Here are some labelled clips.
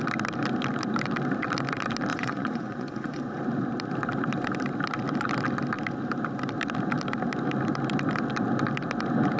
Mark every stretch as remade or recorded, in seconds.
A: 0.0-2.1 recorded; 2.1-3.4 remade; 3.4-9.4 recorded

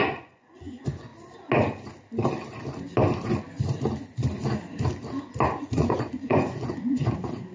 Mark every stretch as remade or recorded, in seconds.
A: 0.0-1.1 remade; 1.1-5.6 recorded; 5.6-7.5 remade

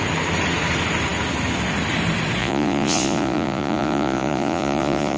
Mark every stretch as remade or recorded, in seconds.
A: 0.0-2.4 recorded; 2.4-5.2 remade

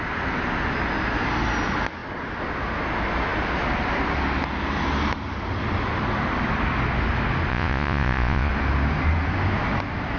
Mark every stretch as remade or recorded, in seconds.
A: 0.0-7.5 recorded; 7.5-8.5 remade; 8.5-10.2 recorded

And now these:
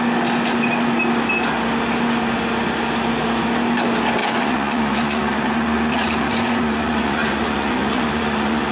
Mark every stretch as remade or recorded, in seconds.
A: 0.0-4.2 recorded; 4.2-8.7 remade

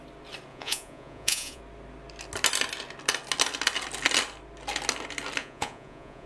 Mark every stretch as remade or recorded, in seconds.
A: 0.0-0.5 recorded; 0.5-1.6 remade; 1.6-5.4 recorded; 5.4-6.3 remade